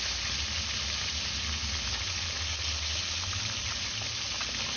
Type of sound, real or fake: real